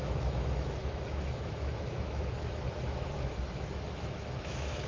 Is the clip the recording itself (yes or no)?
no